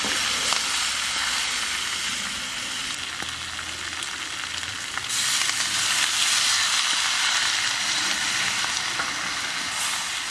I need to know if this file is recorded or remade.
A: recorded